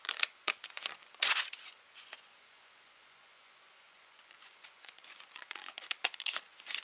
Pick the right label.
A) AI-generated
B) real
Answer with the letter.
A